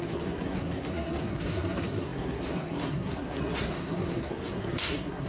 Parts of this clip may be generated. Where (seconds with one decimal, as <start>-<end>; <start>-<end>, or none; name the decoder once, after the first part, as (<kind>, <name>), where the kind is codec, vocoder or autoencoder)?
0.0-5.3 (codec, SNAC)